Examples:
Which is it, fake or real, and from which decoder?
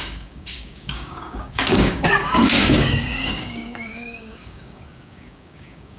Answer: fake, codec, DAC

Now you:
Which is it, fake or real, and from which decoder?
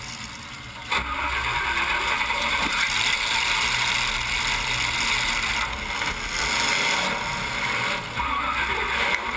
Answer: real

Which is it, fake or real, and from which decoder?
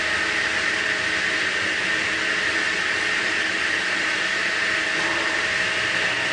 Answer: real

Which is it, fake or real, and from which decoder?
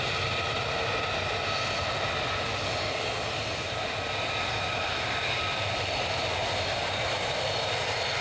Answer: real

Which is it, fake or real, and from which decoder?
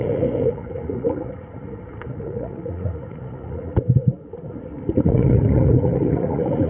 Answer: fake, vocoder, Vocos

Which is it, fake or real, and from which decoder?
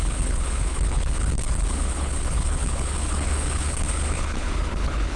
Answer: fake, codec, HILCodec